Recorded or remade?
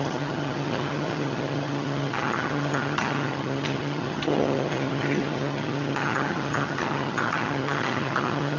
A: remade